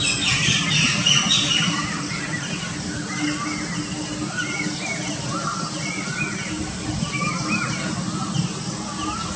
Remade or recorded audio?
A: recorded